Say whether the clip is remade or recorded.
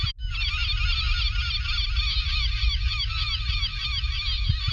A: recorded